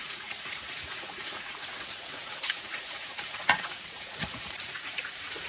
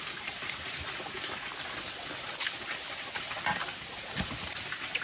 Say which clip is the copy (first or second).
first